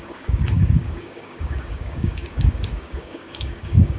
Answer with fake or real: fake